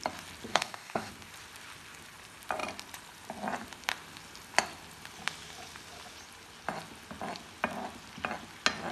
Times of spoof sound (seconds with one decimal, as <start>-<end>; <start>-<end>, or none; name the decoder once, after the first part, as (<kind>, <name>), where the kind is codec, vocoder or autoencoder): 0.5-1.1 (codec, DAC)